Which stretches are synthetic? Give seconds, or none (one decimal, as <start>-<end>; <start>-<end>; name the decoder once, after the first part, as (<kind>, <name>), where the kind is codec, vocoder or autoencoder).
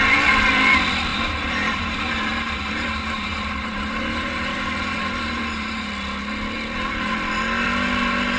1.1-5.9 (vocoder, BigVGAN v2)